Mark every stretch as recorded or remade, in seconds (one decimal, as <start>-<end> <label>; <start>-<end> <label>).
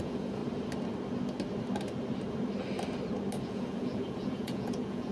0.0-0.4 remade; 0.4-3.5 recorded; 3.5-5.1 remade